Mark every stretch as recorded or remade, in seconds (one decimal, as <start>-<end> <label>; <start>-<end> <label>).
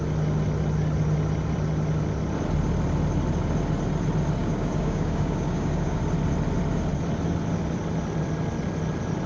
0.0-4.4 recorded; 4.4-6.0 remade; 6.0-9.3 recorded